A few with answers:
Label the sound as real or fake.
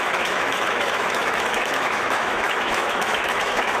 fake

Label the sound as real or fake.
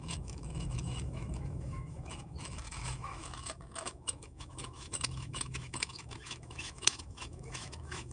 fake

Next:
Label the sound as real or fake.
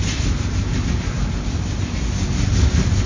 real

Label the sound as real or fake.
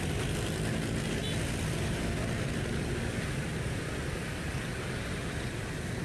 real